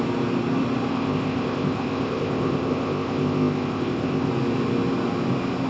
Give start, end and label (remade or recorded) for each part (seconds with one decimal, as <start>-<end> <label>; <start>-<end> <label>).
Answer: 0.0-0.9 recorded; 0.9-4.3 remade; 4.3-5.7 recorded